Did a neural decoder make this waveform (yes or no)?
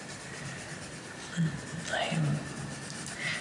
no